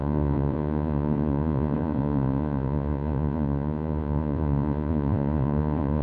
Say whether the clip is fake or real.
fake